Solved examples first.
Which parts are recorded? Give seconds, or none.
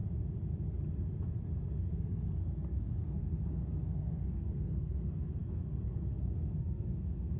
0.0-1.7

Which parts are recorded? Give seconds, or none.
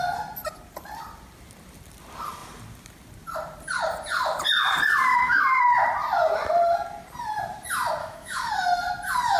0.0-5.1; 5.6-8.0; 8.5-9.4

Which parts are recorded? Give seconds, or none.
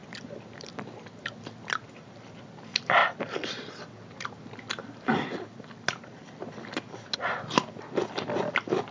1.3-3.0; 3.8-8.9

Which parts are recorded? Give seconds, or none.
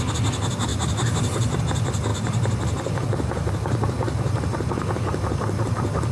0.0-0.7; 1.6-6.1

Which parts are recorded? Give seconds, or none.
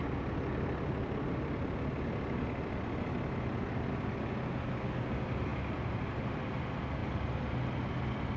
0.0-8.4